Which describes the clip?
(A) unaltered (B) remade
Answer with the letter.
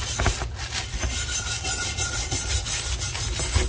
A